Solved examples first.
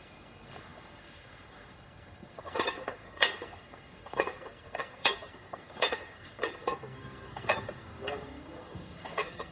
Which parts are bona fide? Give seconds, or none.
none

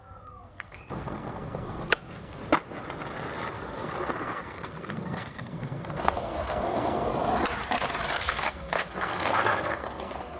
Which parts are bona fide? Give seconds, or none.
2.4-3.5; 7.1-8.2

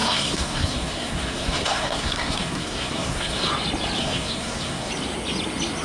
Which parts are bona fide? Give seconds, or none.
3.5-4.0; 4.9-5.8